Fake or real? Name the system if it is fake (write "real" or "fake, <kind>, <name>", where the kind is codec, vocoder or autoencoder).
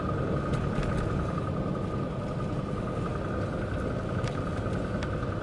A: real